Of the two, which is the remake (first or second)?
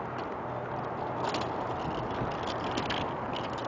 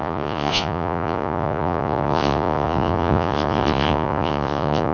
second